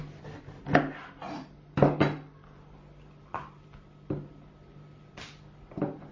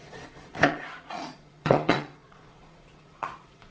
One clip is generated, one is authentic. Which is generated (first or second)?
second